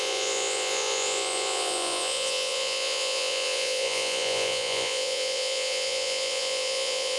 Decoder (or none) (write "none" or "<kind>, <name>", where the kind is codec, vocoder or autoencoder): vocoder, Vocos